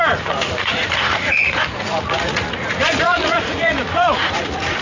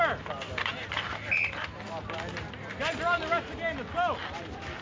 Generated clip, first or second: first